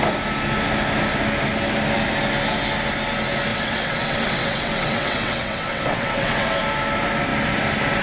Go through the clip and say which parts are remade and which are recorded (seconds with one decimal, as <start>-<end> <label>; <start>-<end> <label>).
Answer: 0.0-3.5 recorded; 3.5-6.6 remade; 6.6-8.0 recorded